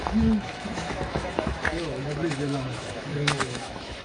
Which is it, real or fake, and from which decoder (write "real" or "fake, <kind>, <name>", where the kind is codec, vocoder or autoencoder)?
fake, autoencoder, DAC-VAE